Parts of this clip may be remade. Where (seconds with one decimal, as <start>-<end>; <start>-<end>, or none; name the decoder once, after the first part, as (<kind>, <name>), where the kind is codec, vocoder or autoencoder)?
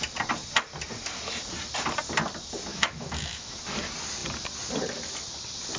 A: 2.7-3.6 (autoencoder, DAC-VAE)